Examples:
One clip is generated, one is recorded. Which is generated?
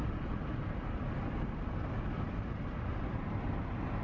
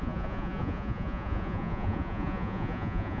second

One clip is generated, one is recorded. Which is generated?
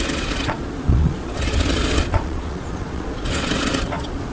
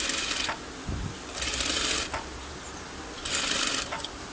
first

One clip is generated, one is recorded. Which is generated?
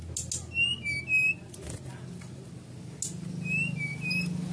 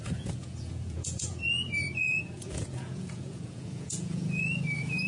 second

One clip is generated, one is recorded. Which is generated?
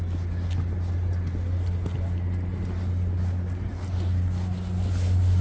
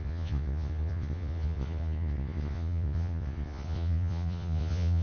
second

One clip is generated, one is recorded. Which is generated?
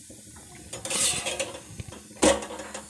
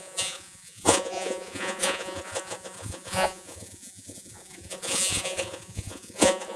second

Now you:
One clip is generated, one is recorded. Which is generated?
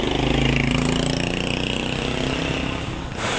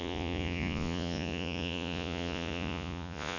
second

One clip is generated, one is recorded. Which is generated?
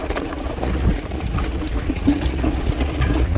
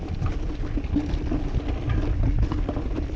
first